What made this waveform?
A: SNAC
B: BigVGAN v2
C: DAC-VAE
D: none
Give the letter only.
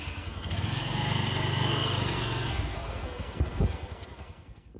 A